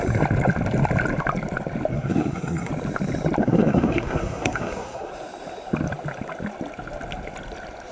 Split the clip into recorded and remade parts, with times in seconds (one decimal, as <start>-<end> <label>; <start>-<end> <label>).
0.0-1.9 recorded; 1.9-2.7 remade; 2.7-3.4 recorded; 3.4-5.1 remade; 5.1-7.9 recorded